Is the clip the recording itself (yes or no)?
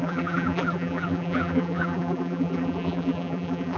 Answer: no